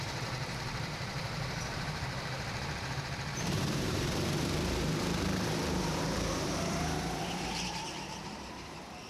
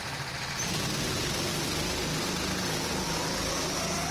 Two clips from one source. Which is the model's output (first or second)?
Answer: first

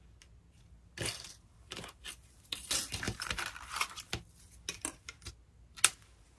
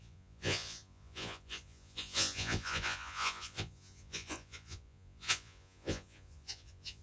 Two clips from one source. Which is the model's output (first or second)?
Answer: second